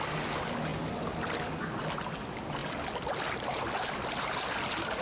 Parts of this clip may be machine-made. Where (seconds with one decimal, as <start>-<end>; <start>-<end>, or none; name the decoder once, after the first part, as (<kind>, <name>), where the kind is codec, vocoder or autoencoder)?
0.7-1.5 (vocoder, BigVGAN v2)